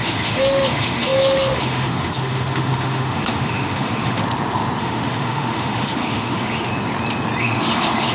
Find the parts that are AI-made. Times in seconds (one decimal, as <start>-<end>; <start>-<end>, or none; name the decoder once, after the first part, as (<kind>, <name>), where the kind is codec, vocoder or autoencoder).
0.0-4.2 (autoencoder, DAC-VAE); 4.8-6.7; 7.4-8.1